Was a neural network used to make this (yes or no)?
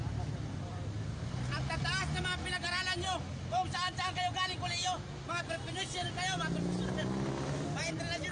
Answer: no